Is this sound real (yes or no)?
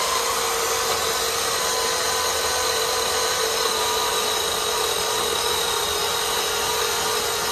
yes